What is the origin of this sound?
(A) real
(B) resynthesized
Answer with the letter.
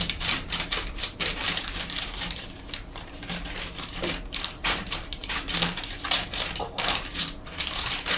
B